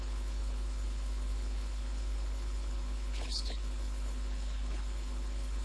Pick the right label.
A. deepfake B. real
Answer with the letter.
A